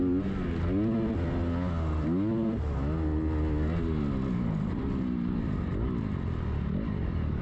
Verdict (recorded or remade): recorded